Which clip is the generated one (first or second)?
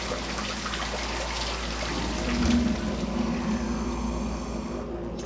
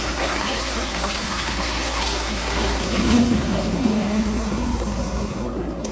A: second